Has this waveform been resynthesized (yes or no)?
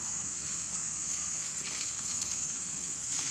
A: yes